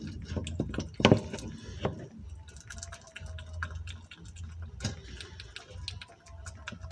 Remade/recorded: recorded